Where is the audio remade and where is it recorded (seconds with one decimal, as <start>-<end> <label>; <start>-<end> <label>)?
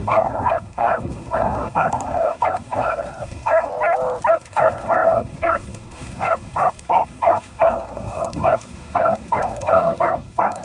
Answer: 0.0-3.7 remade; 3.7-4.3 recorded; 4.3-10.6 remade